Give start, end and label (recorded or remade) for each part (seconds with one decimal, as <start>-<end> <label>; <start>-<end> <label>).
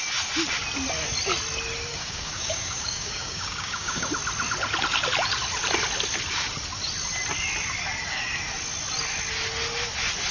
0.0-1.9 recorded; 1.9-4.1 remade; 4.1-10.3 recorded